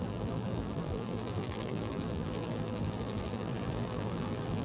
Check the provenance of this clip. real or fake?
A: fake